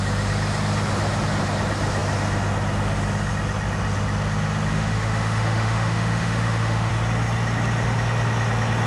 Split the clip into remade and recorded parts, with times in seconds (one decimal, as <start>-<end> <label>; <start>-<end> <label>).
0.0-4.7 recorded; 4.7-6.9 remade; 6.9-8.9 recorded